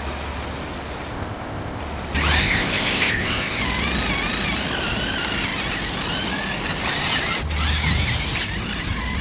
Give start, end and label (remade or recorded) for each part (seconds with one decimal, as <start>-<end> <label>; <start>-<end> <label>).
0.0-1.1 recorded; 1.1-1.8 remade; 1.8-2.4 recorded; 2.4-3.6 remade; 3.6-9.2 recorded